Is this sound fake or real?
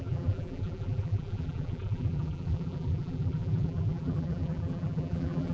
fake